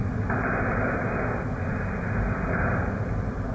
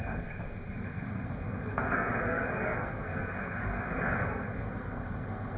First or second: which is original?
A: first